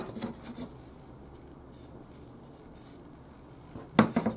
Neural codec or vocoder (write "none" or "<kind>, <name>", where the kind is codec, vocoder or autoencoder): none